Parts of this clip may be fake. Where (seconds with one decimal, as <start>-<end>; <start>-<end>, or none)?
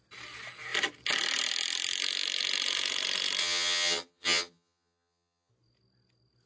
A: 3.4-5.5